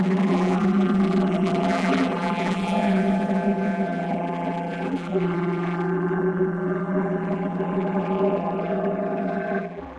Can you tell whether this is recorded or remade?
remade